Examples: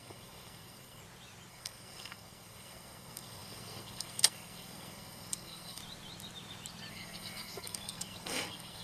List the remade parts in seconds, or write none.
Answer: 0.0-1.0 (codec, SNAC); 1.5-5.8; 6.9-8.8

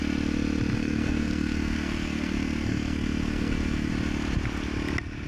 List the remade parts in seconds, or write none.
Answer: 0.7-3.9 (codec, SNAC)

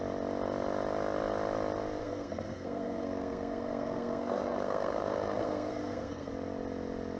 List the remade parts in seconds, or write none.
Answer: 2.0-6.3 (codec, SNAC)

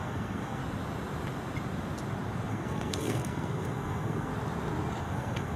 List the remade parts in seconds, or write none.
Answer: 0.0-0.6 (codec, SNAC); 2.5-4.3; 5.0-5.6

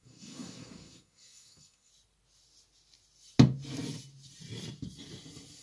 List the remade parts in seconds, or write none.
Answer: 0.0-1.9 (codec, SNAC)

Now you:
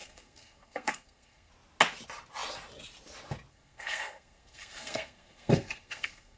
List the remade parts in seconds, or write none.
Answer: 0.0-1.5 (codec, SNAC); 3.5-6.4

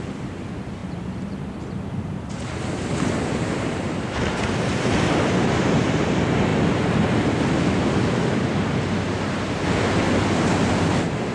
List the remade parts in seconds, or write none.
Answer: none